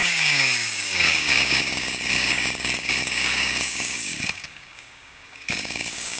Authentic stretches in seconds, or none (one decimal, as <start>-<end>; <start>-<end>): none